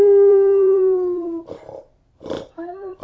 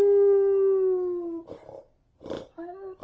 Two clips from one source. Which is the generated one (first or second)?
first